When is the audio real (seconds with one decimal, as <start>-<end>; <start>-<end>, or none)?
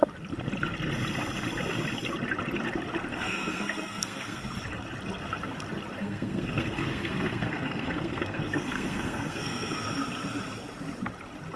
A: 0.0-3.1; 4.4-6.0; 9.8-11.6